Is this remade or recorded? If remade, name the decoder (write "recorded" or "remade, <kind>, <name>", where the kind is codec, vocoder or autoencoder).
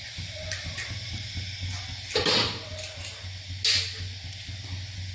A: recorded